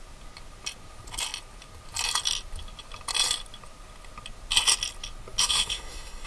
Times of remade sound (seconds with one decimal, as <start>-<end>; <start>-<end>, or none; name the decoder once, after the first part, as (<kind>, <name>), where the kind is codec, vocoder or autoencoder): 5.4-6.3 (autoencoder, DAC-VAE)